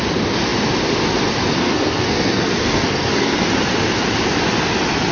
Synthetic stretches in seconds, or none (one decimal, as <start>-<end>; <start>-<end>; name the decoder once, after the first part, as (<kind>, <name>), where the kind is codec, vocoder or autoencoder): 1.6-3.5 (codec, SNAC)